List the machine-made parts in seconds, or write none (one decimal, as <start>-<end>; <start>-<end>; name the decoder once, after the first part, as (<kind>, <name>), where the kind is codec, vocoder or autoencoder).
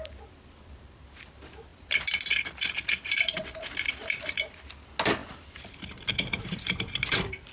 1.7-4.6 (vocoder, BigVGAN v2); 5.2-7.5